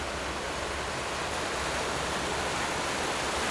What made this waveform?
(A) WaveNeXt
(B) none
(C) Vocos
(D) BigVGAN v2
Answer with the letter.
B